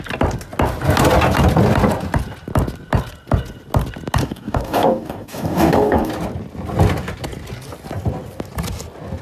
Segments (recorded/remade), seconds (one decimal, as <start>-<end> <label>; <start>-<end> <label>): 0.0-4.2 recorded; 4.2-6.1 remade; 6.1-9.2 recorded